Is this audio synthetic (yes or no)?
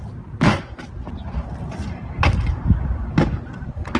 no